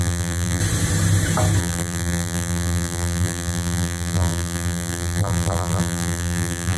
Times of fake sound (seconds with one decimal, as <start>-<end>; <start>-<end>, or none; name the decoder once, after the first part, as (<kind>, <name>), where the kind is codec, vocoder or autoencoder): 0.0-0.6 (vocoder, BigVGAN v2); 1.6-6.8